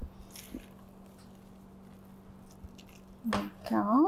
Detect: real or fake real